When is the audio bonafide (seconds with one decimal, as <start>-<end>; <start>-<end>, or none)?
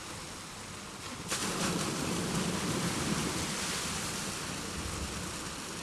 0.0-5.8